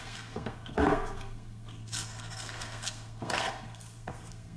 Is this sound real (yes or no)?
no